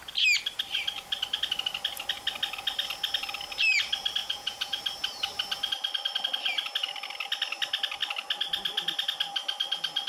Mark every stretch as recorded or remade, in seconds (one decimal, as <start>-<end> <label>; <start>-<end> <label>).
0.0-4.2 recorded; 4.2-4.8 remade; 4.8-10.1 recorded